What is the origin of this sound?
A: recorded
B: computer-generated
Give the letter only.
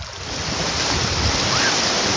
A